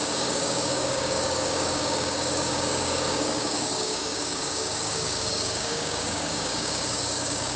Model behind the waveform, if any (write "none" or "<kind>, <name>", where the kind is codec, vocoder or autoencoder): codec, DAC